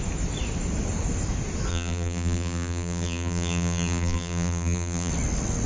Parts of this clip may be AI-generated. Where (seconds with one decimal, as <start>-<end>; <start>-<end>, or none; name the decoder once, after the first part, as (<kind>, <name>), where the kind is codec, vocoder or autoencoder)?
1.7-5.1 (vocoder, BigVGAN v2)